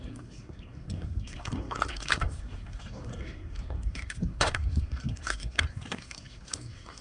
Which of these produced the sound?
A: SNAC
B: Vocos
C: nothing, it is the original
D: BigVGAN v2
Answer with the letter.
A